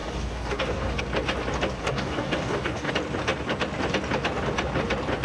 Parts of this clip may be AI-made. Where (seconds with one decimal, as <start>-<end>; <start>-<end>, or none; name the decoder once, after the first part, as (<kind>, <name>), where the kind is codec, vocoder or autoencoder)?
0.0-1.0 (codec, DAC); 1.8-2.9